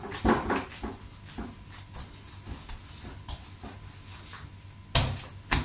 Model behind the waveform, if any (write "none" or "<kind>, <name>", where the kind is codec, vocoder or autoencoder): none